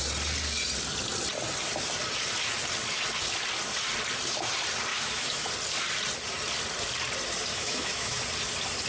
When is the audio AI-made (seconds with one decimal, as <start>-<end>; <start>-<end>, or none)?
4.9-5.5; 7.5-8.2